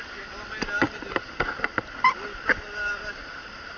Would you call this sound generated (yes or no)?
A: no